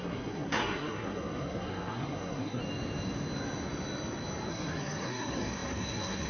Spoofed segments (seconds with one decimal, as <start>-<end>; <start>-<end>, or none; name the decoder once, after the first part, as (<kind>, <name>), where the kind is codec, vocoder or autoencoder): 0.0-2.6 (codec, SNAC); 4.5-6.3